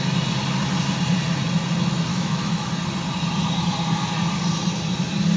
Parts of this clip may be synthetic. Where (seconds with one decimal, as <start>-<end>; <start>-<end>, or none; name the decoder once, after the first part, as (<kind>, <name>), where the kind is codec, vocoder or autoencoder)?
2.1-2.7 (autoencoder, DAC-VAE)